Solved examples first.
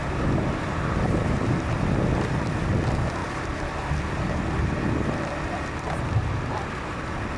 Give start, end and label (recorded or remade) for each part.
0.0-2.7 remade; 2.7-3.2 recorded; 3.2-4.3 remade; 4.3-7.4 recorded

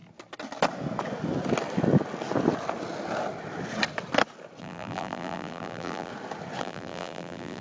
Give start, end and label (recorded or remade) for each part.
0.0-4.6 recorded; 4.6-6.1 remade; 6.1-6.6 recorded; 6.6-7.6 remade

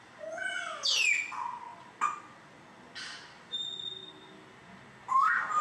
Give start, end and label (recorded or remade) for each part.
0.0-5.6 recorded

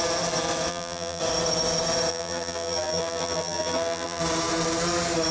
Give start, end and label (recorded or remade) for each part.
0.0-0.7 recorded; 0.7-1.2 remade; 1.2-2.1 recorded; 2.1-4.2 remade; 4.2-5.3 recorded

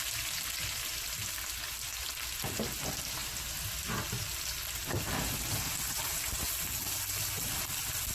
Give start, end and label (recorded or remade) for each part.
0.0-8.1 recorded

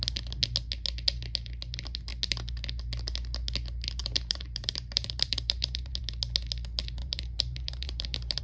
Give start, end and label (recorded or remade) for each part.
0.0-4.0 recorded; 4.0-6.0 remade; 6.0-7.0 recorded; 7.0-8.4 remade

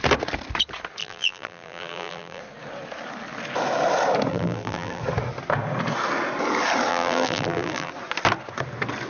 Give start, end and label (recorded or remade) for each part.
0.0-1.0 recorded; 1.0-2.4 remade; 2.4-4.3 recorded; 4.3-5.0 remade; 5.0-6.9 recorded; 6.9-7.9 remade; 7.9-9.1 recorded

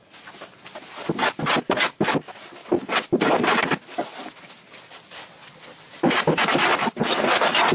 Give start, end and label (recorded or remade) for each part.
0.0-1.1 remade; 1.1-2.6 recorded; 2.6-6.9 remade; 6.9-7.7 recorded